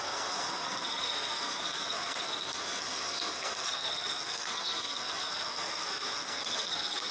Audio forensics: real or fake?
fake